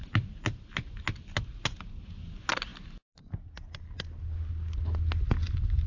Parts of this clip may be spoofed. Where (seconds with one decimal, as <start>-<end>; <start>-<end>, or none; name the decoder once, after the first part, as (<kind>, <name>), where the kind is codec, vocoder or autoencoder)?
none